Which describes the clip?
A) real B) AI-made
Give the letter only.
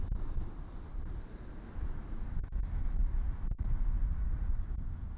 A